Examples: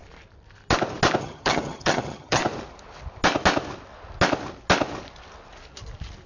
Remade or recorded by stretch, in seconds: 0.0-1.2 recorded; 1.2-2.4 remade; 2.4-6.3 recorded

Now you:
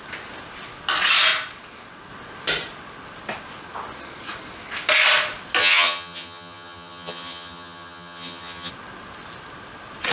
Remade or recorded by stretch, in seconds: 0.0-5.6 recorded; 5.6-8.7 remade; 8.7-10.1 recorded

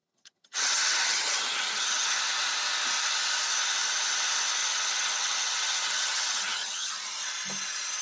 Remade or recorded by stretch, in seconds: 0.0-2.2 remade; 2.2-4.6 recorded; 4.6-6.9 remade; 6.9-8.0 recorded

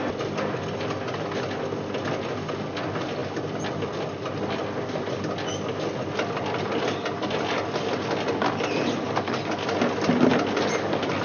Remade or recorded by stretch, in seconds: 0.0-11.2 recorded